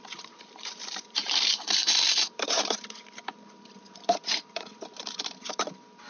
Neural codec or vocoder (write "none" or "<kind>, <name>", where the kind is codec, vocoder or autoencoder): vocoder, BigVGAN v2